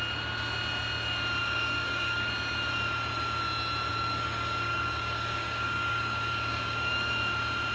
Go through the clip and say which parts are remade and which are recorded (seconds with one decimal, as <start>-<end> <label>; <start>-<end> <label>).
0.0-1.4 recorded; 1.4-2.3 remade; 2.3-3.9 recorded; 3.9-7.1 remade; 7.1-7.7 recorded